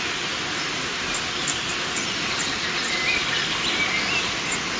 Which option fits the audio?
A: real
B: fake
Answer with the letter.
A